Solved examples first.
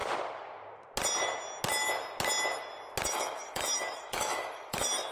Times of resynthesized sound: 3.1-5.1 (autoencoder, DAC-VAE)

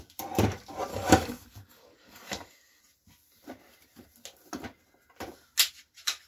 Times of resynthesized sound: 0.9-2.8 (codec, DAC)

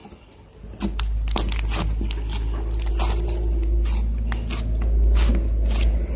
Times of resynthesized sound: none

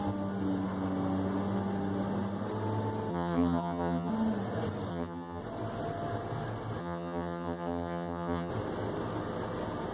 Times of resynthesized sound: 3.1-4.1 (vocoder, HiFi-GAN); 4.9-5.4; 6.8-8.5

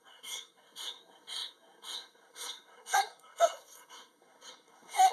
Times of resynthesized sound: 0.0-5.1 (codec, SNAC)